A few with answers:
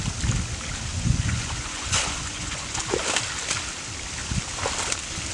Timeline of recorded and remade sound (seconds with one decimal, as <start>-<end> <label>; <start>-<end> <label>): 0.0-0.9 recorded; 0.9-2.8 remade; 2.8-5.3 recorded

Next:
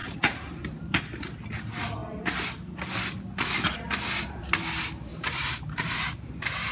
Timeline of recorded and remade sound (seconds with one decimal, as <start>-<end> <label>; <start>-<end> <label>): 0.0-1.0 remade; 1.0-5.1 recorded; 5.1-6.7 remade

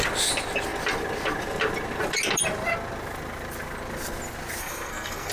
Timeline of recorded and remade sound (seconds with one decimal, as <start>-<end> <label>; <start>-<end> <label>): 0.0-4.6 recorded; 4.6-5.3 remade

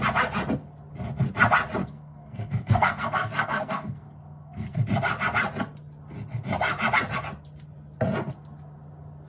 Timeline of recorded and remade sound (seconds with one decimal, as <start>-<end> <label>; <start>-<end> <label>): 0.0-1.8 recorded; 1.8-4.8 remade; 4.8-9.3 recorded